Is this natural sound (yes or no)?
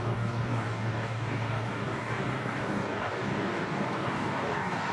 no